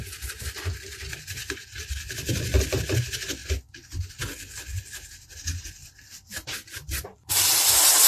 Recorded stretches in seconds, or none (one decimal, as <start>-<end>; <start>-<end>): 0.0-5.8; 7.3-8.1